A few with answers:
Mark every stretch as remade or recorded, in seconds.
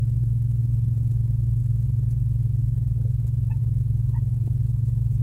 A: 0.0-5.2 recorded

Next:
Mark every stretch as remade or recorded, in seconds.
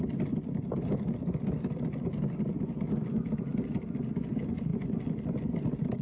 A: 0.0-6.0 recorded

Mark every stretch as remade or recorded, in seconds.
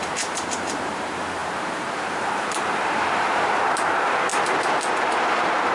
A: 0.0-4.3 remade; 4.3-4.9 recorded; 4.9-5.7 remade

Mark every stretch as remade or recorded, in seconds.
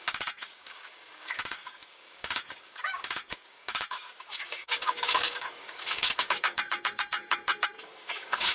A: 0.0-8.5 remade